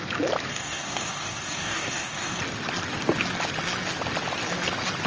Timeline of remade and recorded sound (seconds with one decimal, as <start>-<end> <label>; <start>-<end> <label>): 0.0-0.5 recorded; 0.5-2.4 remade; 2.4-5.1 recorded